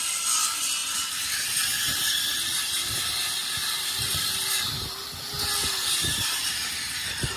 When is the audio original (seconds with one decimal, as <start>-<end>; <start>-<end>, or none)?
0.0-0.8; 4.5-7.4